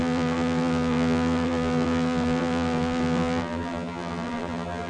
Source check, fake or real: fake